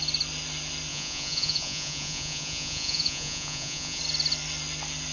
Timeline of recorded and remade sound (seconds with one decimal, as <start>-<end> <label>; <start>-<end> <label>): 0.0-0.9 recorded; 0.9-4.0 remade; 4.0-5.1 recorded